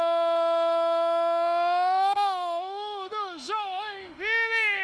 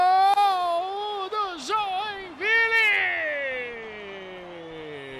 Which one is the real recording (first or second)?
second